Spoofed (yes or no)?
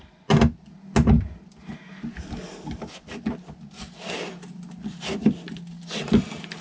no